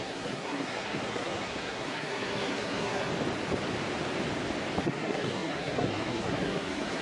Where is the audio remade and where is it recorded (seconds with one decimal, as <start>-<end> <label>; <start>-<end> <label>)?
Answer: 0.0-3.1 remade; 3.1-4.8 recorded; 4.8-7.0 remade